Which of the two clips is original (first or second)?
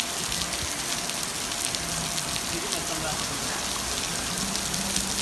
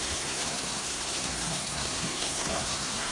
first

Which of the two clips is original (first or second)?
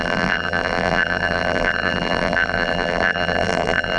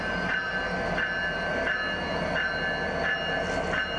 second